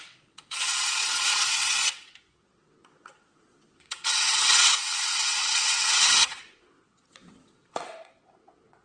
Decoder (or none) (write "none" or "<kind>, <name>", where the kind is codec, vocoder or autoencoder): vocoder, WaveNeXt